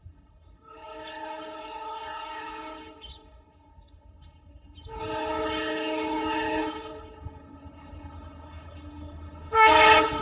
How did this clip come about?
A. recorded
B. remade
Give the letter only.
B